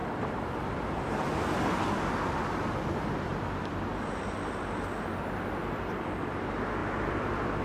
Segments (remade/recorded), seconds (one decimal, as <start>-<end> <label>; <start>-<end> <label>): 0.0-1.1 remade; 1.1-3.3 recorded; 3.3-3.9 remade; 3.9-6.8 recorded; 6.8-7.6 remade